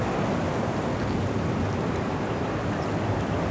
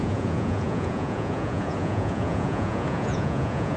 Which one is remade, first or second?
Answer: second